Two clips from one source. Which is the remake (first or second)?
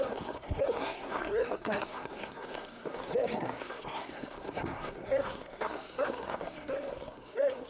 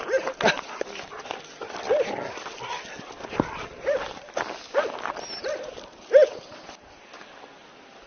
first